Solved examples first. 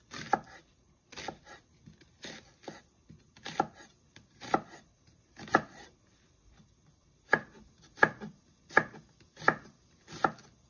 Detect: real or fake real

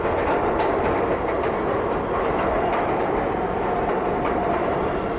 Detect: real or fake real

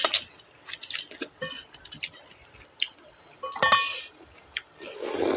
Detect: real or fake real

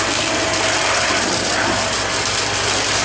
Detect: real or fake real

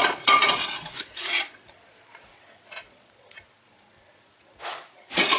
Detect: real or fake fake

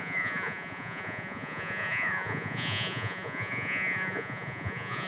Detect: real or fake fake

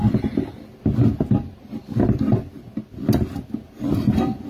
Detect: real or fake real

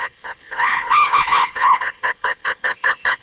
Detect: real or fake fake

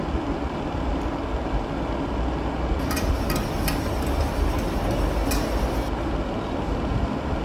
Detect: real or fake real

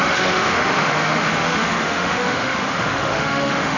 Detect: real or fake fake